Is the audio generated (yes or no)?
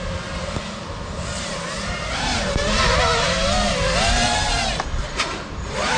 no